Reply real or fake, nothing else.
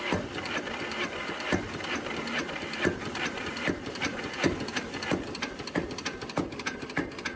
fake